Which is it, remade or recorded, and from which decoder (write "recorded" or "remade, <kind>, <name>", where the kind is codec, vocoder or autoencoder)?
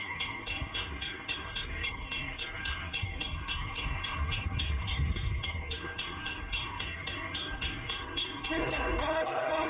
remade, codec, SNAC